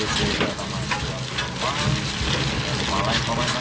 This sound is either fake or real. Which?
real